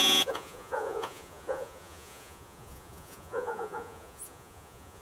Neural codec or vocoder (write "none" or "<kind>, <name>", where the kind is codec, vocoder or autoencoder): vocoder, Vocos